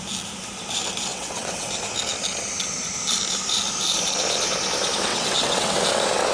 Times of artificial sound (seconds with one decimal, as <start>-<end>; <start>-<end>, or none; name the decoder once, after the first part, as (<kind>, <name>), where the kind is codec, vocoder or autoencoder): 1.1-1.7 (vocoder, WaveNeXt); 5.1-5.7